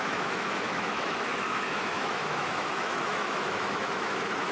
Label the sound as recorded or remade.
remade